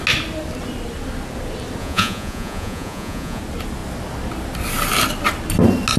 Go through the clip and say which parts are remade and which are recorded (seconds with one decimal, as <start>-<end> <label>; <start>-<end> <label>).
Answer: 0.0-1.8 recorded; 1.8-3.4 remade; 3.4-6.0 recorded